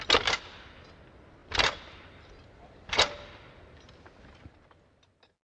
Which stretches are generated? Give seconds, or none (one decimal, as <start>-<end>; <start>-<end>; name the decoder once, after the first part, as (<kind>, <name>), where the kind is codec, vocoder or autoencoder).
none